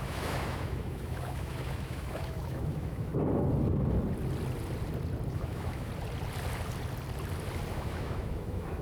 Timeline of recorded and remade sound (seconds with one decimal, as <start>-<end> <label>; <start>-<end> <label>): 0.0-3.1 remade; 3.1-5.3 recorded; 5.3-5.9 remade; 5.9-7.7 recorded; 7.7-8.8 remade